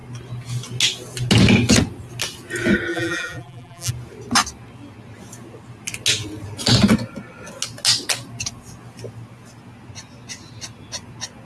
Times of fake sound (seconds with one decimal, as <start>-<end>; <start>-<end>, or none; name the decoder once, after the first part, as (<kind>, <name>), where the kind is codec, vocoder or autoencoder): 2.9-3.9 (vocoder, BigVGAN v2)